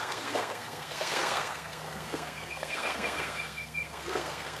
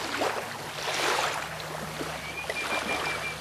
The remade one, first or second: first